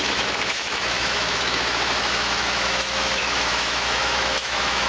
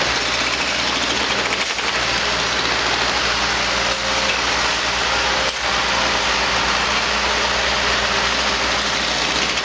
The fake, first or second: first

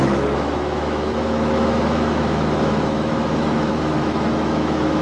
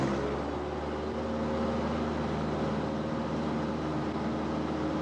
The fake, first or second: first